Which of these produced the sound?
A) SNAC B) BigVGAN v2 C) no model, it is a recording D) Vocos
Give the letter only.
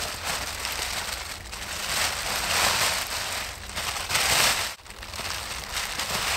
C